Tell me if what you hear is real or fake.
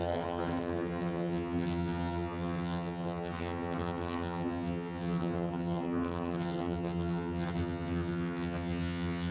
fake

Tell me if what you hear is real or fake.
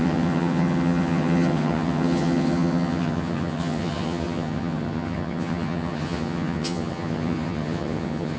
fake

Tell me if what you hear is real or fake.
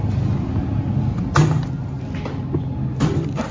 real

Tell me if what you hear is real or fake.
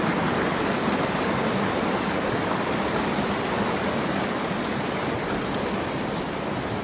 real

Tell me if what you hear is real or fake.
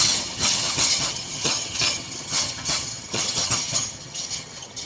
fake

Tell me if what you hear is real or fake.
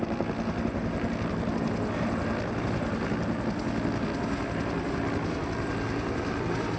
real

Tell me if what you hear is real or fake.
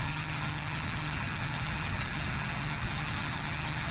fake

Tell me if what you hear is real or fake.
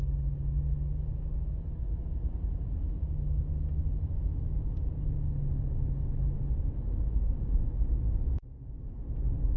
real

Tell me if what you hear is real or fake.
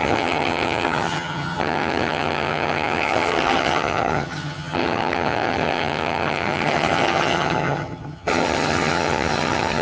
fake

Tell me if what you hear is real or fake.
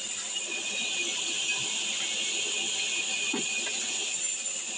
real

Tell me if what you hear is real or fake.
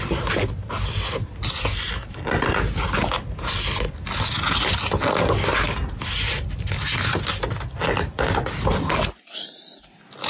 real